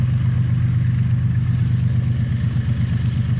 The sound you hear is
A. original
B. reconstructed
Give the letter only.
A